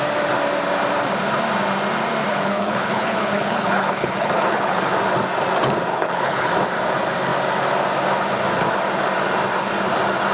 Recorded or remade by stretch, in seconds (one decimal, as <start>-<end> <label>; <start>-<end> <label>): 0.0-2.3 recorded; 2.3-4.9 remade; 4.9-5.9 recorded; 5.9-6.5 remade; 6.5-10.3 recorded